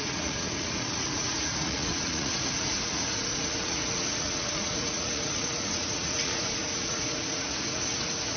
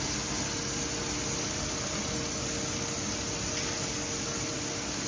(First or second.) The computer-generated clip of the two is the first